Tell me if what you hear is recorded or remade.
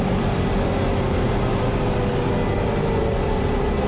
recorded